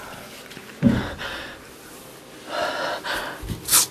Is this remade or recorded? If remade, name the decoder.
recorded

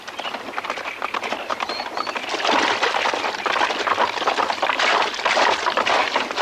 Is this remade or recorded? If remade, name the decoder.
recorded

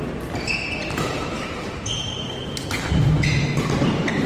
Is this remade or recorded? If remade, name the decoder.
recorded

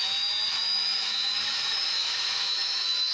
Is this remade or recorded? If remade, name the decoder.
remade, autoencoder, DAC-VAE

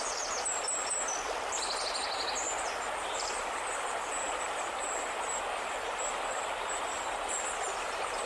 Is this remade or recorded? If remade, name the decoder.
recorded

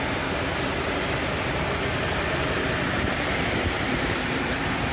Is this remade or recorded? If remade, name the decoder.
recorded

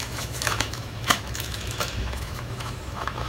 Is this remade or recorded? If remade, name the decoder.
remade, autoencoder, DAC-VAE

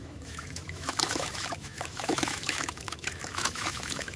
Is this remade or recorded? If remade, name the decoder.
remade, autoencoder, DAC-VAE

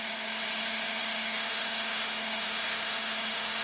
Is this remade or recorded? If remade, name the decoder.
remade, autoencoder, DAC-VAE